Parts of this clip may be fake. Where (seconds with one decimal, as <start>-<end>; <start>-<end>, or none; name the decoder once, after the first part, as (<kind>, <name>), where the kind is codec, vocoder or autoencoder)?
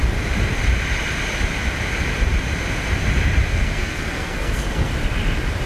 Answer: 3.5-4.9 (codec, SNAC)